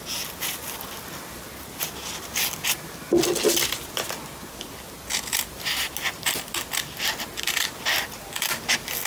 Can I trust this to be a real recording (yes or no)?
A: yes